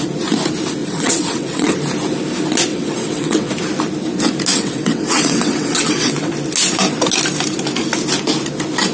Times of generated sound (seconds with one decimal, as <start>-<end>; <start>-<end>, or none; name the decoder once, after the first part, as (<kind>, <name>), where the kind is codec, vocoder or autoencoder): 0.8-1.8 (vocoder, WaveNeXt); 2.7-3.5; 4.5-6.3